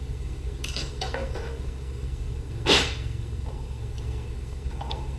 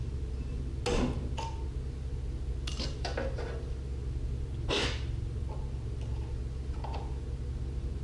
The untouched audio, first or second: second